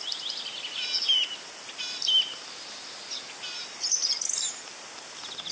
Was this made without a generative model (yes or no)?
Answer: yes